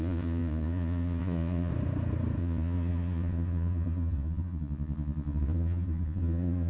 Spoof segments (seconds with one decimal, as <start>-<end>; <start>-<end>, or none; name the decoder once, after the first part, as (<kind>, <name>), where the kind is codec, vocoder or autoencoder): 0.0-1.7 (vocoder, Vocos); 2.4-6.7